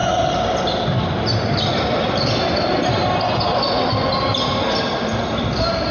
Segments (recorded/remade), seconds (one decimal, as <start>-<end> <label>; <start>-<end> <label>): 0.0-5.9 recorded